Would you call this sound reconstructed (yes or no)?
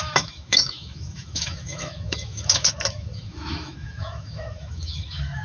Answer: yes